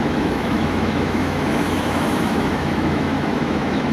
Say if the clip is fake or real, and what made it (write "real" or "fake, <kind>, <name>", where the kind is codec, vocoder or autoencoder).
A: fake, autoencoder, DAC-VAE